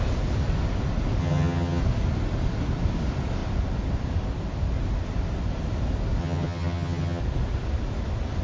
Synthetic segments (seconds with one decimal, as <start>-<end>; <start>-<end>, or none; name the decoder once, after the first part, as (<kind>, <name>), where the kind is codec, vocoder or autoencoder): 1.2-1.8 (vocoder, HiFi-GAN); 6.2-7.2